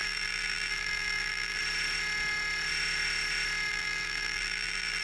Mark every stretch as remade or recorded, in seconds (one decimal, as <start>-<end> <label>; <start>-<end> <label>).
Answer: 0.0-1.6 remade; 1.6-3.7 recorded; 3.7-5.0 remade